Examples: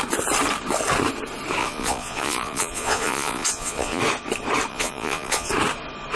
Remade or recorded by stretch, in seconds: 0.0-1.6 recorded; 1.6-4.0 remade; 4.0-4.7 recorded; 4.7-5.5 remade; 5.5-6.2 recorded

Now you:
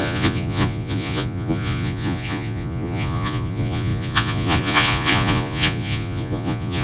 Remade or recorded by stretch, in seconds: 0.0-6.8 remade

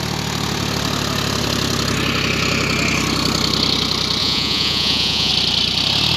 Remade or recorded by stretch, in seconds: 0.0-4.2 recorded; 4.2-5.3 remade; 5.3-6.2 recorded

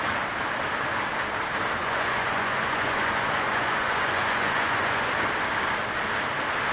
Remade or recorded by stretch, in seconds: 0.0-1.8 recorded; 1.8-5.1 remade; 5.1-6.7 recorded

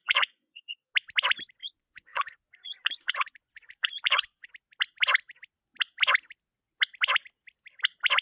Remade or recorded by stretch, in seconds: 0.0-0.7 remade; 0.7-1.6 recorded; 1.6-4.5 remade; 4.5-8.2 recorded

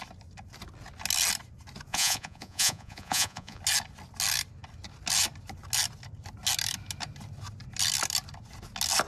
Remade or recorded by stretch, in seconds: 0.0-1.9 recorded; 1.9-3.6 remade; 3.6-9.1 recorded